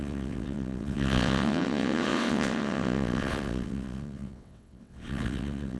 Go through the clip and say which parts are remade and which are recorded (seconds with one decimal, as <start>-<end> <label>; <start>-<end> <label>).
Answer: 0.0-5.8 remade